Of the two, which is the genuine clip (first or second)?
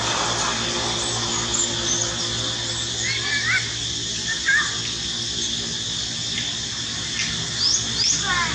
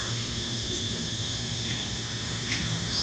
first